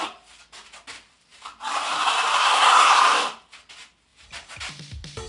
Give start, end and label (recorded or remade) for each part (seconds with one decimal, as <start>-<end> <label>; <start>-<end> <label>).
0.0-2.4 recorded; 2.4-3.0 remade; 3.0-5.3 recorded